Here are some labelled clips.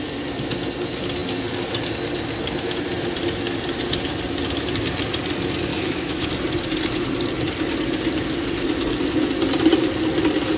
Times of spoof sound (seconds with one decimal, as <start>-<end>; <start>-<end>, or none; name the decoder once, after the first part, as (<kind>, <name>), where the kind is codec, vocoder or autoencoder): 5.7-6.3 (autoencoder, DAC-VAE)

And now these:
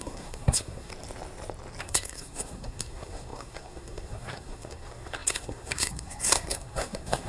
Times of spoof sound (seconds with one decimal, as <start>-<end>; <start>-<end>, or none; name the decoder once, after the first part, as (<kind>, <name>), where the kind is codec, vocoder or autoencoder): 0.0-0.9 (codec, SNAC); 1.8-7.3

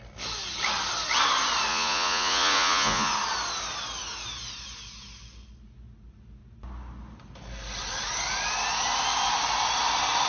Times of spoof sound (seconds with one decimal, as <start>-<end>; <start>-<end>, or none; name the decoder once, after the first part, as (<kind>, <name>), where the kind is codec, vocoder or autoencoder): 1.7-3.1 (vocoder, Vocos)

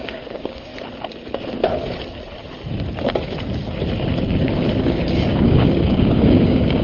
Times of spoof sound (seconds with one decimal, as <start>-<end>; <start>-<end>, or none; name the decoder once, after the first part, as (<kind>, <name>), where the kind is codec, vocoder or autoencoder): 0.0-0.7 (codec, DAC); 4.8-6.8

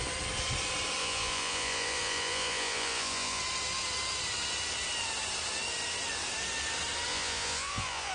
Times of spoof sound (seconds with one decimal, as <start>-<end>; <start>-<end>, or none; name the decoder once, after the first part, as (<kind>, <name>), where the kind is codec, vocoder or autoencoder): 1.0-3.4 (vocoder, Vocos); 7.1-8.1